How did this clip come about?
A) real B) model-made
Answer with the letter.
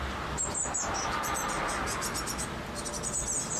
B